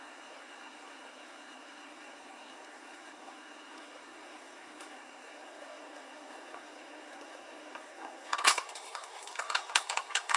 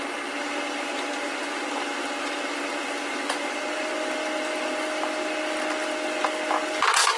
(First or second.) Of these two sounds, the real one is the second